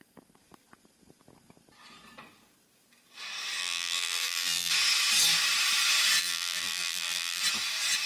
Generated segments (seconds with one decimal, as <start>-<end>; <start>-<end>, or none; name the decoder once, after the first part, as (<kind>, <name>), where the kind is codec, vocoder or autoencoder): 3.6-4.7 (vocoder, BigVGAN v2); 6.2-7.4